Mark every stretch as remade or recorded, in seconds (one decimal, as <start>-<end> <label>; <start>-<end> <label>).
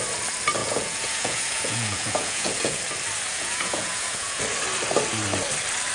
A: 0.0-0.6 recorded; 0.6-2.8 remade; 2.8-3.3 recorded; 3.3-4.4 remade; 4.4-5.9 recorded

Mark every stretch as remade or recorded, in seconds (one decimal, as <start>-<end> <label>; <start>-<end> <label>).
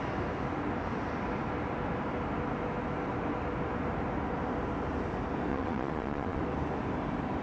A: 0.0-5.5 recorded; 5.5-6.4 remade; 6.4-7.4 recorded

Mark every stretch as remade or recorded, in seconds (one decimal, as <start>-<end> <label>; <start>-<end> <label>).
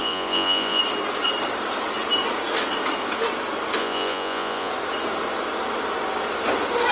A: 0.0-0.8 remade; 0.8-3.8 recorded; 3.8-4.7 remade; 4.7-6.9 recorded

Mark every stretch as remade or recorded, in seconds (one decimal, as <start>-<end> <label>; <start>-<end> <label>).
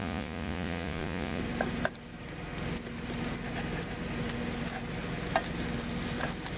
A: 0.0-1.4 remade; 1.4-6.6 recorded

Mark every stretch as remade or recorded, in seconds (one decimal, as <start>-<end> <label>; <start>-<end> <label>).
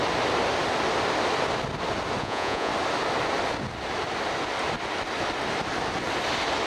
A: 0.0-2.2 recorded; 2.2-2.7 remade; 2.7-6.7 recorded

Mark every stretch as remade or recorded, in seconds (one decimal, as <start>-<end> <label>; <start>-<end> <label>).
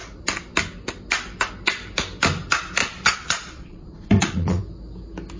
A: 0.0-2.8 recorded; 2.8-4.6 remade; 4.6-5.4 recorded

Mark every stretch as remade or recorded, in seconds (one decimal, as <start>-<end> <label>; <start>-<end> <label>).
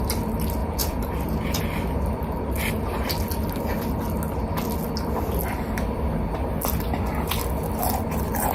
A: 0.0-0.6 recorded; 0.6-1.6 remade; 1.6-8.5 recorded